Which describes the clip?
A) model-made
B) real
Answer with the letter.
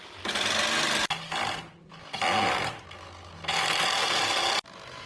B